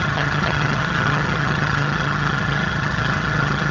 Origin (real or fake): fake